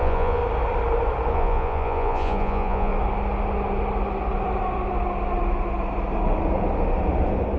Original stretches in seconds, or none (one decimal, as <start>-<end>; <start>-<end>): 0.4-1.3; 2.9-7.6

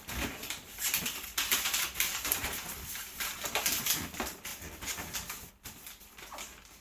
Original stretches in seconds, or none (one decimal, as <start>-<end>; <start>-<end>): 4.5-5.5

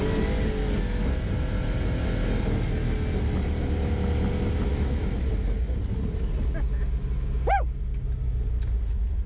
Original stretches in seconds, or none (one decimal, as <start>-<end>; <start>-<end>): 0.0-4.7; 5.2-9.3

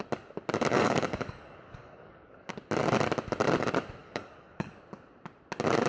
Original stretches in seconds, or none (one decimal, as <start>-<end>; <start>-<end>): 0.0-0.7; 2.5-4.0; 4.8-5.9

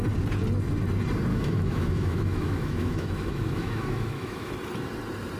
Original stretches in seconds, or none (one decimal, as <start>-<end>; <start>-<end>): 0.0-1.3; 4.5-5.4